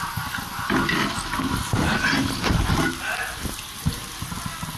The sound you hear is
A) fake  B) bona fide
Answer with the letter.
B